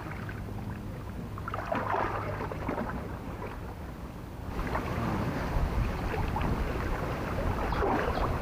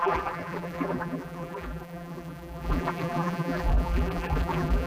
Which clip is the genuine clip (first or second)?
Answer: first